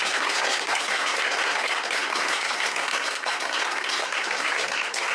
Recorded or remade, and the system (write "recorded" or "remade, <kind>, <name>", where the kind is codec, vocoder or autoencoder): remade, codec, SNAC